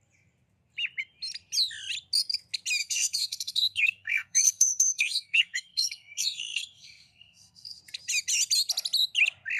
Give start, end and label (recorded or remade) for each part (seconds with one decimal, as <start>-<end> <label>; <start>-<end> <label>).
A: 0.0-2.8 recorded; 2.8-7.8 remade; 7.8-9.6 recorded

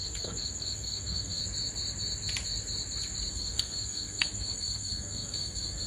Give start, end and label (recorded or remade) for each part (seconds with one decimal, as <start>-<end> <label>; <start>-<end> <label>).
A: 0.0-1.4 remade; 1.4-3.3 recorded; 3.3-5.9 remade

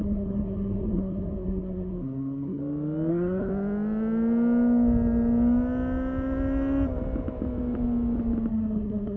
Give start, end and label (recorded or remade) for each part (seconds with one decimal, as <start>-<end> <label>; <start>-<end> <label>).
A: 0.0-2.6 remade; 2.6-3.1 recorded; 3.1-3.5 remade; 3.5-8.5 recorded; 8.5-9.2 remade